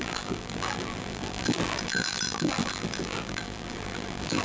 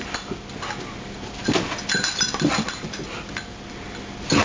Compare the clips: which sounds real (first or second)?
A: second